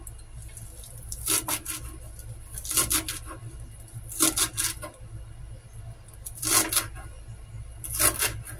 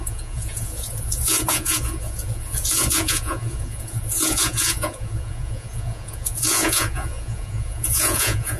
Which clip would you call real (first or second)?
first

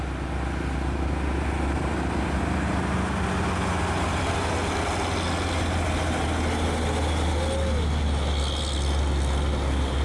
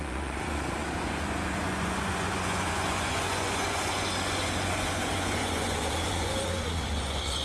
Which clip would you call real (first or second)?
first